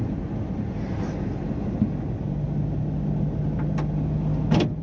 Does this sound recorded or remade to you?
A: recorded